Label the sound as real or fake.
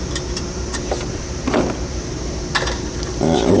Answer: fake